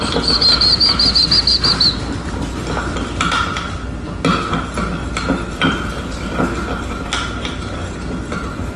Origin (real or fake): real